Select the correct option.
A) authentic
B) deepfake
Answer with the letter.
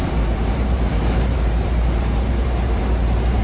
B